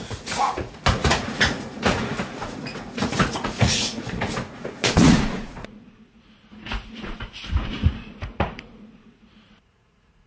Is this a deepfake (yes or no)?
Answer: yes